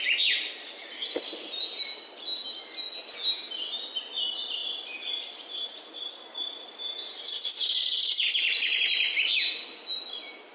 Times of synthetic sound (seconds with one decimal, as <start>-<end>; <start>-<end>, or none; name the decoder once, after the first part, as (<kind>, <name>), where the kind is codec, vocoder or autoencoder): none